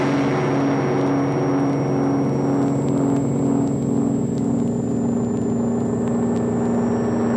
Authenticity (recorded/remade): recorded